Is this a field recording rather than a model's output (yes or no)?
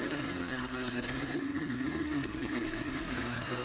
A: no